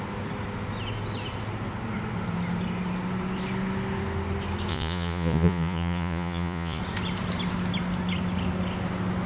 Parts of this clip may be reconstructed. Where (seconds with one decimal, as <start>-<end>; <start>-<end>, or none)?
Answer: 4.7-6.8